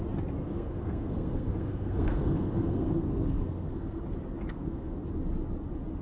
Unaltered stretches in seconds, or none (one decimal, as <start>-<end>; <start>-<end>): 0.0-0.4; 4.0-4.5; 5.0-6.0